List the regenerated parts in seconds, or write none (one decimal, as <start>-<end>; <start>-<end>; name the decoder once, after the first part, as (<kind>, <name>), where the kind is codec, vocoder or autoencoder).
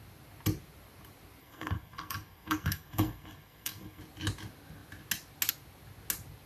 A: 1.4-4.0 (codec, SNAC)